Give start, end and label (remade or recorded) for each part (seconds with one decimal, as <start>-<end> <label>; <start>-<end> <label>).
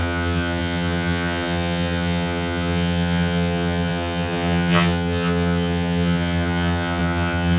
0.0-7.6 remade